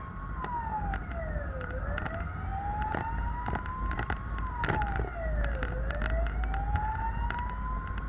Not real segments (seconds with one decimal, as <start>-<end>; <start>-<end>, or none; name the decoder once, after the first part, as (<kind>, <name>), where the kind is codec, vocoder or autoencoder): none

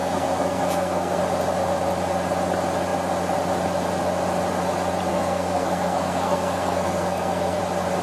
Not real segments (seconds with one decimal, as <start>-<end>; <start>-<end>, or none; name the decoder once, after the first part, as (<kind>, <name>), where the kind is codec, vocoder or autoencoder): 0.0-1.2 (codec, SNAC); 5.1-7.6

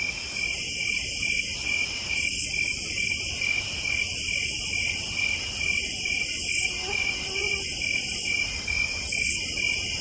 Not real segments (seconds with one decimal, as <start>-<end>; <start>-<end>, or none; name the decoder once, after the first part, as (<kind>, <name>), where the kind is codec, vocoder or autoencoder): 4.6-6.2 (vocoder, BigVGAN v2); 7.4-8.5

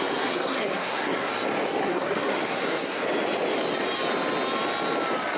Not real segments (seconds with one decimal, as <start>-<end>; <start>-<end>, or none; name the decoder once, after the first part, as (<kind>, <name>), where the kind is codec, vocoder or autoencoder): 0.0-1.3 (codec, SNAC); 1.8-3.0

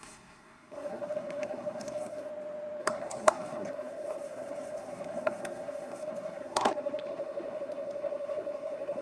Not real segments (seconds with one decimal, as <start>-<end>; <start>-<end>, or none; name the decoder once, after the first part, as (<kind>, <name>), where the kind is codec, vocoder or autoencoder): 0.0-2.3 (codec, SNAC); 2.8-9.0

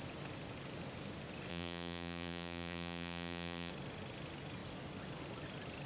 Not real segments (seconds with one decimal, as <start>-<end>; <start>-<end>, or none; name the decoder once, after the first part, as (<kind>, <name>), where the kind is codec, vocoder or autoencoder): 1.5-3.7 (vocoder, BigVGAN v2)